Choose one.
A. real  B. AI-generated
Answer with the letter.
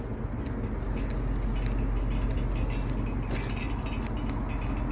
A